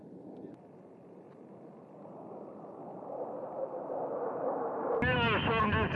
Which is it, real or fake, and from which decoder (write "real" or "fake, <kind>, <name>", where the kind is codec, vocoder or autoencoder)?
real